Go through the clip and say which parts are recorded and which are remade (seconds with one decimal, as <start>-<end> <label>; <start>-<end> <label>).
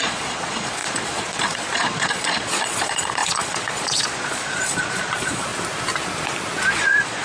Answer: 0.0-5.5 remade; 5.5-6.7 recorded; 6.7-7.2 remade